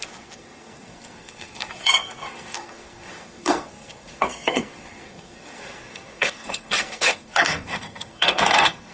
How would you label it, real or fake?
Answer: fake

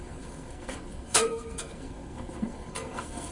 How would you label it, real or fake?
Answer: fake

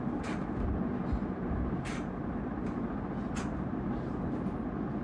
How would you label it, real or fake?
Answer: real